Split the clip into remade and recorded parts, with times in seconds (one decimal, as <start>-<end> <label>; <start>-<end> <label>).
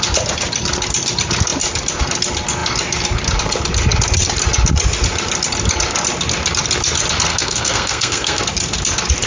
0.0-7.3 recorded; 7.3-8.4 remade; 8.4-9.3 recorded